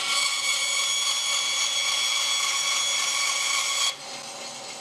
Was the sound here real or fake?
real